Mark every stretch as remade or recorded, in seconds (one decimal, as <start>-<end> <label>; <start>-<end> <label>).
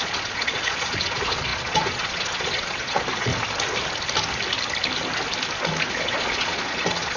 0.0-3.3 remade; 3.3-5.9 recorded; 5.9-7.2 remade